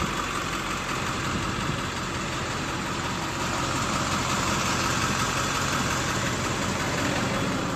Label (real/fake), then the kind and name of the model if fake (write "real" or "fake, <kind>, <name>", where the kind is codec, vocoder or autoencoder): real